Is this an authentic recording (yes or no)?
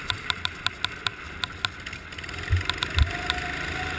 yes